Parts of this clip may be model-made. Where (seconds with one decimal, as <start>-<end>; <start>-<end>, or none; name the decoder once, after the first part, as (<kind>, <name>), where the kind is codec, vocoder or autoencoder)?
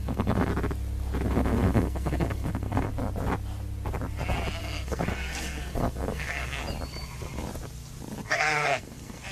0.0-0.5 (codec, SNAC); 1.3-2.9; 4.6-6.6; 8.3-9.3